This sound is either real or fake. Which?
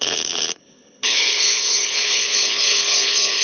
fake